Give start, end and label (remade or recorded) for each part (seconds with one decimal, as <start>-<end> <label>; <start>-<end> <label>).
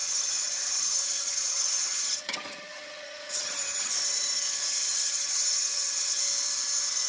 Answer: 0.0-3.9 remade; 3.9-4.8 recorded; 4.8-6.2 remade; 6.2-7.1 recorded